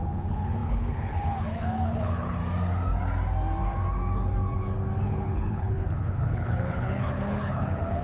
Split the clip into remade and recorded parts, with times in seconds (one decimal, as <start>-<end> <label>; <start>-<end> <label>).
0.0-2.4 remade; 2.4-5.0 recorded; 5.0-8.0 remade